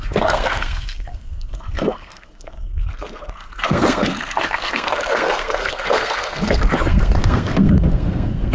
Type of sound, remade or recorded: remade